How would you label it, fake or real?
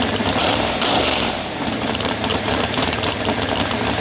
fake